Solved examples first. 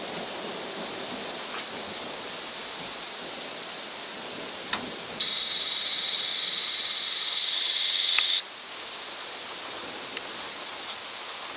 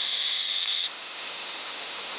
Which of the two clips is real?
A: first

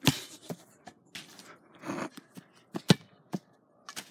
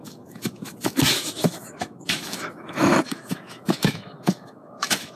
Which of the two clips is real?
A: first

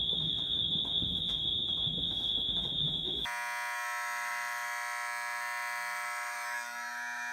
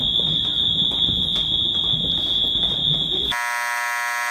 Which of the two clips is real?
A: second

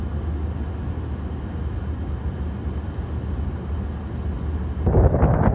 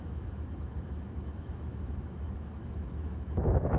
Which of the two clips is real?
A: first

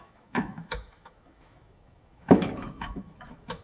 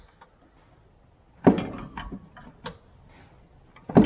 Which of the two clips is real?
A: second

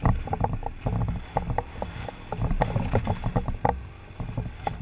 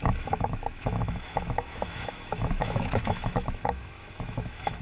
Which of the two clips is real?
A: first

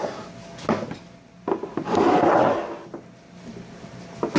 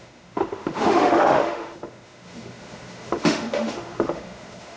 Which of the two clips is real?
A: first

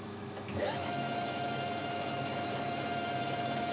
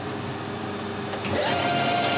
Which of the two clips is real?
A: second